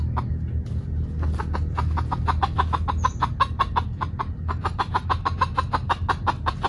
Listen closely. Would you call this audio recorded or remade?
recorded